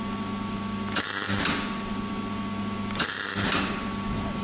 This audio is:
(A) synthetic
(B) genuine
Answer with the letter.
B